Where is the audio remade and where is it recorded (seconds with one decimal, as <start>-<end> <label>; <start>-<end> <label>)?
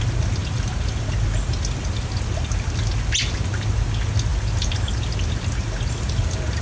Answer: 0.0-6.6 recorded